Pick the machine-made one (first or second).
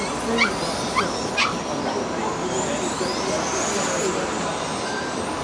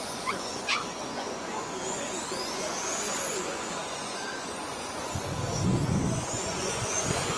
second